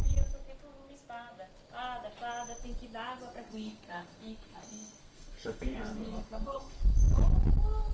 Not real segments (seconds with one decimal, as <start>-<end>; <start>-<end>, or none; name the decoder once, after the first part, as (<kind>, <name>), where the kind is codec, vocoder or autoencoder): 3.4-6.8 (codec, SNAC)